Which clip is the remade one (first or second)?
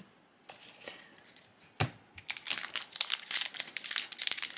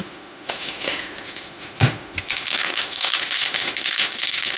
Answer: second